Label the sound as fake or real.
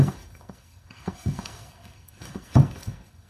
fake